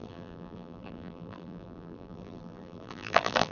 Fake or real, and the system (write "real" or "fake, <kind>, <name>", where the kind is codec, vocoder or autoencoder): fake, vocoder, BigVGAN v2